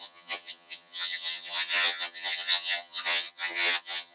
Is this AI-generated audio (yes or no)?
yes